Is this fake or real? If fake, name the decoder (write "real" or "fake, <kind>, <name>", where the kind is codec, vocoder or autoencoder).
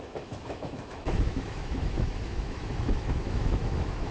fake, autoencoder, DAC-VAE